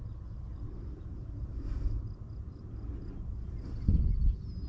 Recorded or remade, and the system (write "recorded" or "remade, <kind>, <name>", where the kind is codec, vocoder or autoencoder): recorded